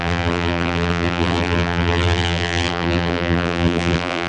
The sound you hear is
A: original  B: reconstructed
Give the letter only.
B